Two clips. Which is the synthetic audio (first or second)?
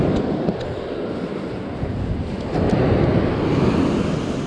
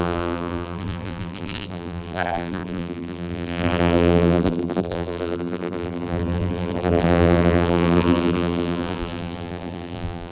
second